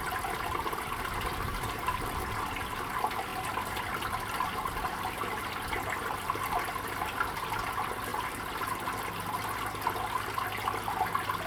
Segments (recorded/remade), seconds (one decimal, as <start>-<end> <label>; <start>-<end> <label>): 0.0-11.5 recorded